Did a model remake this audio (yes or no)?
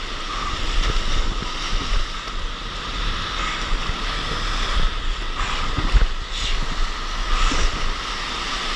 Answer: no